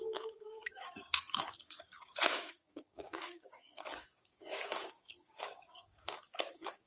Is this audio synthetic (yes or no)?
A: yes